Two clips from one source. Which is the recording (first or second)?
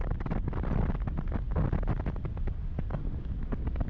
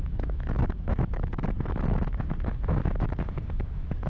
first